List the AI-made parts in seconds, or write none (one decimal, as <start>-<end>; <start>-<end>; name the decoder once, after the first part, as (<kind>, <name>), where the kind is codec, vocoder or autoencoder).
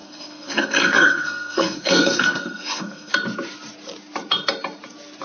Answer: 0.0-3.1 (codec, SNAC)